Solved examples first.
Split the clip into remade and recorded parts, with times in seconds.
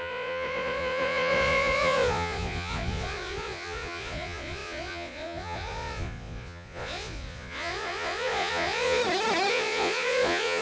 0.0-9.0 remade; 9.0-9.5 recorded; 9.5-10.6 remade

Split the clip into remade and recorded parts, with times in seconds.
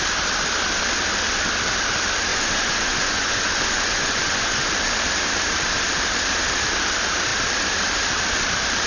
0.0-2.3 recorded; 2.3-4.7 remade; 4.7-8.9 recorded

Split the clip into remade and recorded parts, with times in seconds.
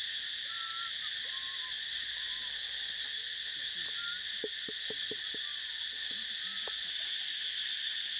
0.0-8.2 recorded